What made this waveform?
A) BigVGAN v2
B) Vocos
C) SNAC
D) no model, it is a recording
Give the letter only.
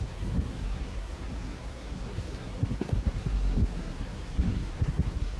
C